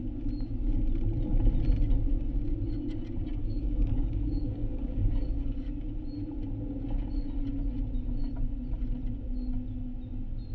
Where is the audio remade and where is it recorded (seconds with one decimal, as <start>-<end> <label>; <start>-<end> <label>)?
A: 0.0-3.4 recorded; 3.4-5.1 remade; 5.1-10.5 recorded